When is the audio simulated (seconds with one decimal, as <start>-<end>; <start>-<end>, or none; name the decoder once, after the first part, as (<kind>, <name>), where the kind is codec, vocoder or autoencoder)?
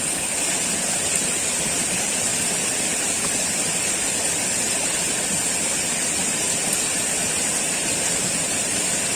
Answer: none